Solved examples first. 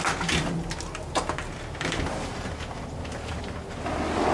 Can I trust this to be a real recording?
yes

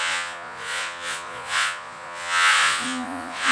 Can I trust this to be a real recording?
no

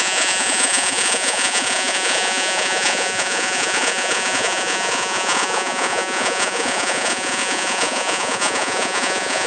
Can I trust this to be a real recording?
no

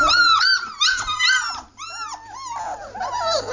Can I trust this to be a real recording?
yes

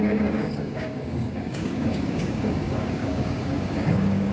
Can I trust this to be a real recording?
no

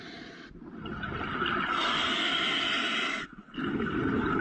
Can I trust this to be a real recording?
yes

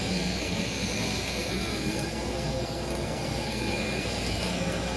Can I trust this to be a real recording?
no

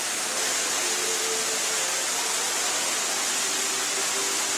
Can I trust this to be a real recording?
yes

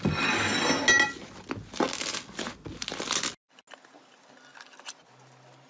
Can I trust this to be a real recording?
yes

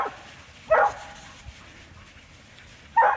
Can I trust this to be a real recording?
yes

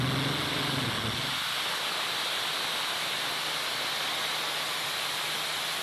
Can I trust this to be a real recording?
yes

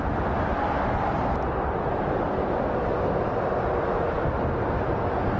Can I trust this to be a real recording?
yes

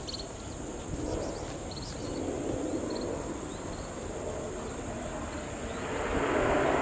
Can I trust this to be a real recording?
yes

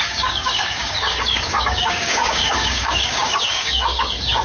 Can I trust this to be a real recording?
no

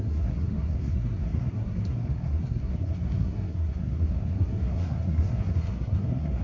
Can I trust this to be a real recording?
no